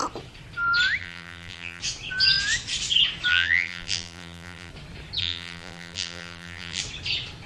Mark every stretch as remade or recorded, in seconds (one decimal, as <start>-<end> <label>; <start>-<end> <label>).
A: 0.0-1.0 recorded; 1.0-1.8 remade; 1.8-3.3 recorded; 3.3-4.7 remade; 4.7-5.2 recorded; 5.2-6.8 remade; 6.8-7.5 recorded